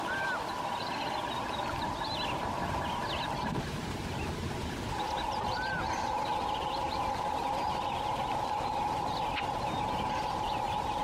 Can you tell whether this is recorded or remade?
recorded